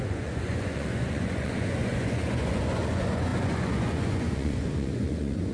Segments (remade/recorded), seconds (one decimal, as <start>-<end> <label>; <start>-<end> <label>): 0.0-5.5 remade